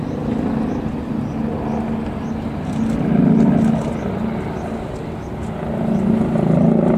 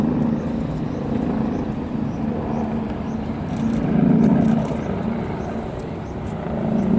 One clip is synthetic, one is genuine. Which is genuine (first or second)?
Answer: first